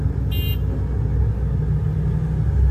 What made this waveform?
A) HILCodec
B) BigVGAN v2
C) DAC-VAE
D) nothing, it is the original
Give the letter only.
D